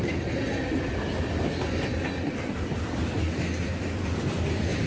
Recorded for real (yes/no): yes